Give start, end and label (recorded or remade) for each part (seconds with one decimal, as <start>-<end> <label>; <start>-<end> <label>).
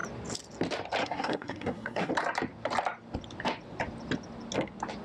0.0-1.0 recorded; 1.0-2.1 remade; 2.1-5.0 recorded